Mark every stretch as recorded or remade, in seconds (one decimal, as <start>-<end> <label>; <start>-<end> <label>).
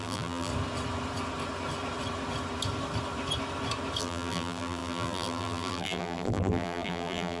0.0-0.5 remade; 0.5-4.0 recorded; 4.0-7.4 remade